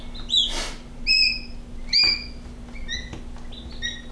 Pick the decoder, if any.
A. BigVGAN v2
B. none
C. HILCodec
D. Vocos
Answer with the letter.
B